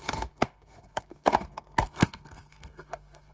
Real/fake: fake